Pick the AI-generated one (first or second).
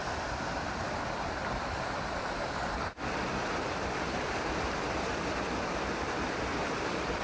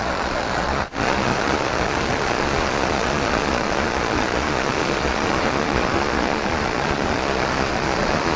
second